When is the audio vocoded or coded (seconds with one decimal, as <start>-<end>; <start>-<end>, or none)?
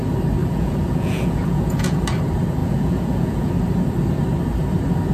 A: 0.4-2.0; 2.6-3.5